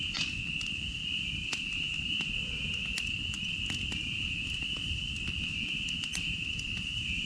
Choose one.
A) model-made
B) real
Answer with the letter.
B